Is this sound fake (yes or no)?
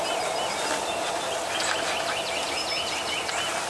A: no